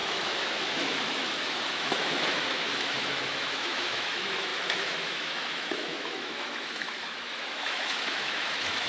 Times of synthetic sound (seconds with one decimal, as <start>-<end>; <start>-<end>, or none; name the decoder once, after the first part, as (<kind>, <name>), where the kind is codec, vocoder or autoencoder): 0.0-8.9 (autoencoder, DAC-VAE)